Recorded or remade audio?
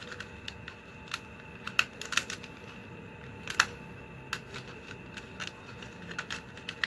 recorded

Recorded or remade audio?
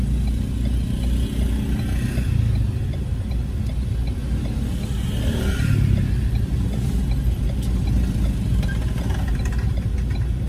recorded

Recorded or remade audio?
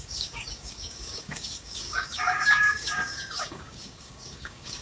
remade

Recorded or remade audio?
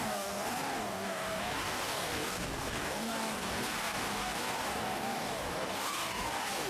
remade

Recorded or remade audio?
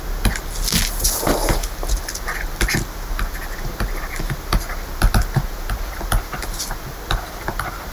recorded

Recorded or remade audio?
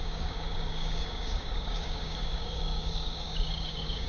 remade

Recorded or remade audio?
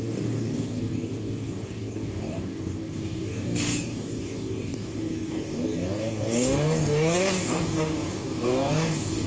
remade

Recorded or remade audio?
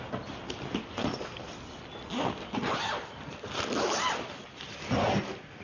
recorded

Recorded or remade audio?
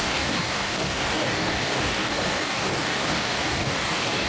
remade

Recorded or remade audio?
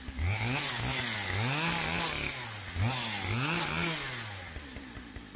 recorded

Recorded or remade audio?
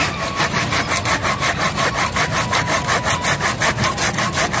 recorded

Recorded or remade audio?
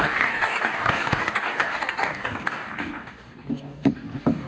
remade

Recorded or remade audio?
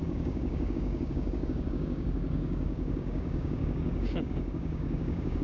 remade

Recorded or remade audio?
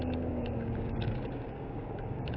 remade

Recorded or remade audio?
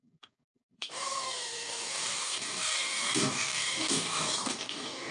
remade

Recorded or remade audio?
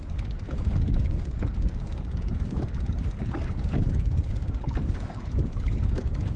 remade